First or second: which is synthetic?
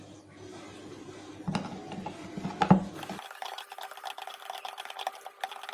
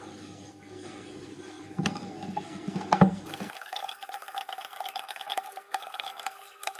second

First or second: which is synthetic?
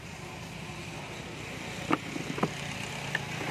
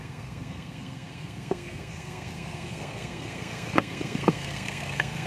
second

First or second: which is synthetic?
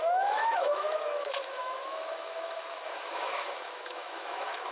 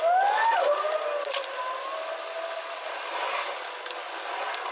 first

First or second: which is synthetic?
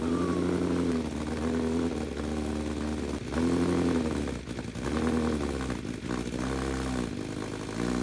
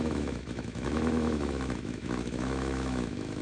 second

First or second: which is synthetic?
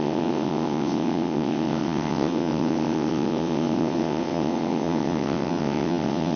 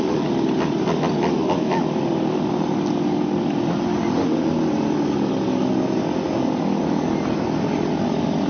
first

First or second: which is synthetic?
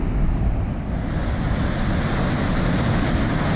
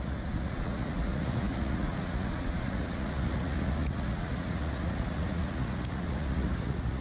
second